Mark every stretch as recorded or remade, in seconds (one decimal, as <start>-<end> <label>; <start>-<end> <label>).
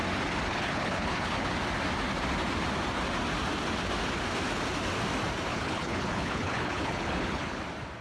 0.0-0.5 recorded; 0.5-1.5 remade; 1.5-5.5 recorded; 5.5-7.6 remade; 7.6-8.0 recorded